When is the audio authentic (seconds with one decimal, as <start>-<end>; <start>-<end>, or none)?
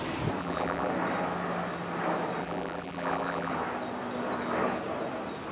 0.0-0.4; 0.9-2.4; 3.5-5.5